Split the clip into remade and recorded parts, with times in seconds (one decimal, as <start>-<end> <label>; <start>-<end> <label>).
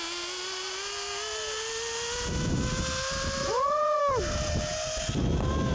0.0-3.4 recorded; 3.4-4.0 remade; 4.0-5.7 recorded